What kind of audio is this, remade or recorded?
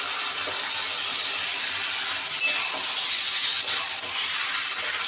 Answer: recorded